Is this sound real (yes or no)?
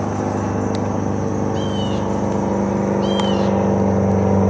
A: yes